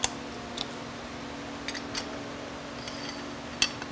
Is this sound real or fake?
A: real